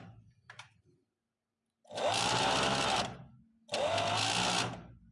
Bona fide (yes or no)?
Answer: yes